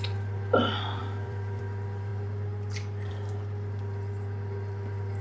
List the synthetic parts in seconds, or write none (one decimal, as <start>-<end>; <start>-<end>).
1.0-1.6